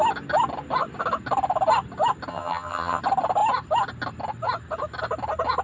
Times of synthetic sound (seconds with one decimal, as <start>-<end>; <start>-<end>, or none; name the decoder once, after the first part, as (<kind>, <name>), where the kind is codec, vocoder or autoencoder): 2.3-3.0 (vocoder, HiFi-GAN)

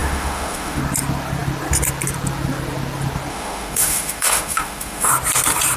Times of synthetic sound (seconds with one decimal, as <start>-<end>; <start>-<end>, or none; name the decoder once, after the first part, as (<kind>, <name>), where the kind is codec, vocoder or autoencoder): 0.0-0.8 (autoencoder, DAC-VAE); 3.3-5.1